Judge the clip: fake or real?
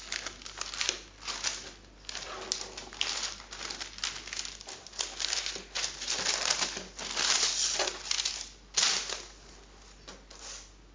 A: real